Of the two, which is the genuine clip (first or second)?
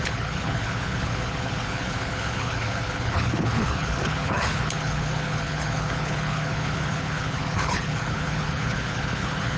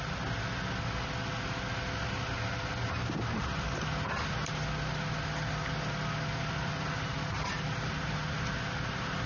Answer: second